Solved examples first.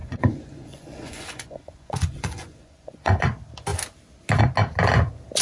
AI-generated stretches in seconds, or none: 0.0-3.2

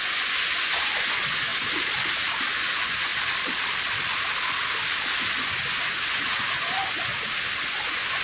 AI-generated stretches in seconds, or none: 0.0-1.5; 2.5-3.1; 5.4-7.1; 7.6-8.2

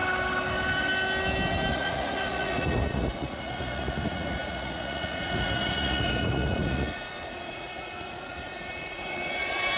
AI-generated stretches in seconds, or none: 1.7-9.8

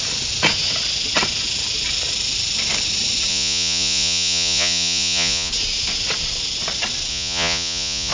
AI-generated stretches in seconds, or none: 3.3-5.5; 7.1-8.1